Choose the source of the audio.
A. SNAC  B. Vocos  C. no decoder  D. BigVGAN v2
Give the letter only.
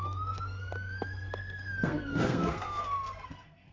A